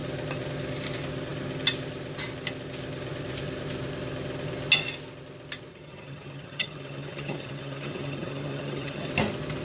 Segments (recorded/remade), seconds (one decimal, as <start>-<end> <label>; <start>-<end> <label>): 0.0-5.7 recorded; 5.7-9.1 remade; 9.1-9.6 recorded